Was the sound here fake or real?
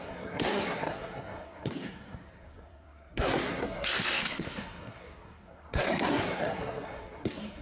fake